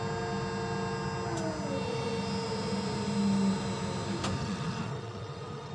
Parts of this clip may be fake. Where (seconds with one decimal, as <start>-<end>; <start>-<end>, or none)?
4.4-5.7